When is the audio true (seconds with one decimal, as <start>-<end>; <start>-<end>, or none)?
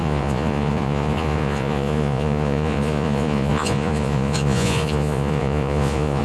none